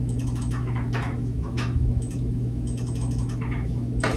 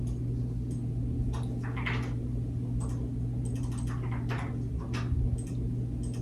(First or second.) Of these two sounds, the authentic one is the second